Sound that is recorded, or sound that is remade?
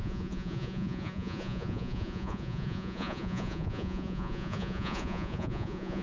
remade